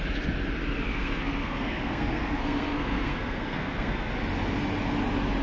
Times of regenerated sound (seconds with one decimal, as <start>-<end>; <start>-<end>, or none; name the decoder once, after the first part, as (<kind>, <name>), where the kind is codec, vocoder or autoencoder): 0.9-4.1 (codec, SNAC)

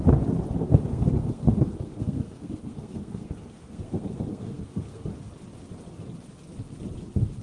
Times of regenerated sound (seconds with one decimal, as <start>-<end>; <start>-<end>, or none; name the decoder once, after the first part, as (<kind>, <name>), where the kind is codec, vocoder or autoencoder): 0.7-5.1 (codec, SNAC)

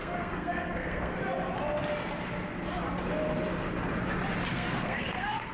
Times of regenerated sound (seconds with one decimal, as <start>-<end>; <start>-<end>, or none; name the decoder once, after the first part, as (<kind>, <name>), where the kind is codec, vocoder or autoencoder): 0.0-1.2 (codec, SNAC); 4.5-5.5

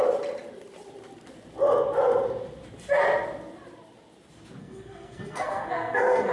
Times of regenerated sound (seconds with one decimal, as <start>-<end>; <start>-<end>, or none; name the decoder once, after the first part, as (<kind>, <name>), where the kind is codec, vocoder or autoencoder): 4.6-6.3 (codec, SNAC)

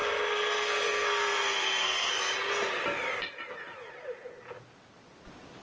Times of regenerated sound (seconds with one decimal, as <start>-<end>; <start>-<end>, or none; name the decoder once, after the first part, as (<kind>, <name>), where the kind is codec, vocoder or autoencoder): 0.0-2.1 (codec, SNAC)

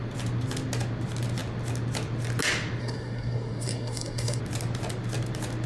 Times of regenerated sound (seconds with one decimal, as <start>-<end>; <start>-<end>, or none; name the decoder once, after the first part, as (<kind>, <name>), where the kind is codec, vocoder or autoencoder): 2.8-4.4 (codec, SNAC)

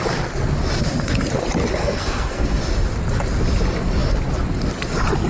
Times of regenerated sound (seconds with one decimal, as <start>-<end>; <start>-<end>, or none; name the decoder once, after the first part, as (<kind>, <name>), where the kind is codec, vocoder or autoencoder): 1.8-2.6 (codec, SNAC)

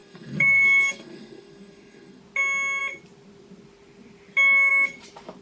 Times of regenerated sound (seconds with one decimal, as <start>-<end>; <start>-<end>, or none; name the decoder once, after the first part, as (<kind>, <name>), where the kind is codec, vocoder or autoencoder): 0.0-2.2 (codec, SNAC)